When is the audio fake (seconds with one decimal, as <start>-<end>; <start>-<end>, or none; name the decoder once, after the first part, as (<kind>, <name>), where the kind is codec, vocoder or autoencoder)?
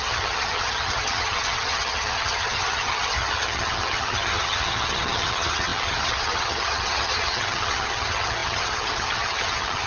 0.0-9.9 (vocoder, HiFi-GAN)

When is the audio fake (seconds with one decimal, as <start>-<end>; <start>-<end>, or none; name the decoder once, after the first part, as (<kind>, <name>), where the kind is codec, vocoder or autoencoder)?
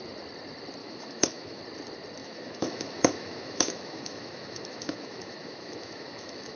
0.8-1.6 (autoencoder, DAC-VAE); 2.2-6.6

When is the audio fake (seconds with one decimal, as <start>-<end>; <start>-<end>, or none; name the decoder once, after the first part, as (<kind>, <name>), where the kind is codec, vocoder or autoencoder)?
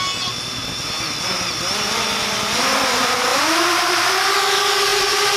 3.3-4.3 (vocoder, BigVGAN v2); 4.9-5.4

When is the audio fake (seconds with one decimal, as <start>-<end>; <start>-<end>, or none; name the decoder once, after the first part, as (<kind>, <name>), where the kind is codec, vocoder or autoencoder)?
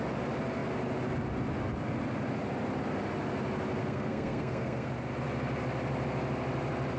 3.8-4.9 (codec, SNAC)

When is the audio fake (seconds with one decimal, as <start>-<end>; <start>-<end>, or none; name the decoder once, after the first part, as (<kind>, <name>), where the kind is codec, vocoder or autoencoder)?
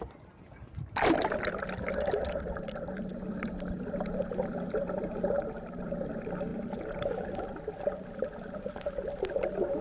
none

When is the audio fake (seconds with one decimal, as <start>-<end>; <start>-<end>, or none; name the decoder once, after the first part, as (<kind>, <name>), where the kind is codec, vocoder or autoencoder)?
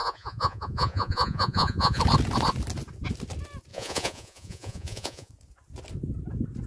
0.0-2.0 (vocoder, Vocos); 3.7-5.3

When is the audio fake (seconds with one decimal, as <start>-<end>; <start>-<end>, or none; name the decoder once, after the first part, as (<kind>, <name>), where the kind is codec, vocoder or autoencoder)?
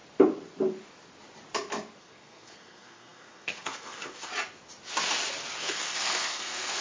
2.0-4.3 (codec, SNAC); 5.6-6.8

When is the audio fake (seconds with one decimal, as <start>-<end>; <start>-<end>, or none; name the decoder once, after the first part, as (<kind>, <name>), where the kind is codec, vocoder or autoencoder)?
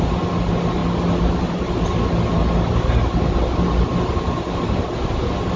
none